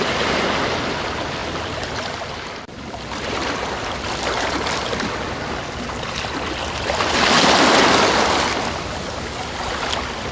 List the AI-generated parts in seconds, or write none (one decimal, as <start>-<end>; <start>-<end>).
none